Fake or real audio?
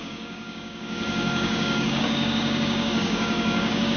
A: fake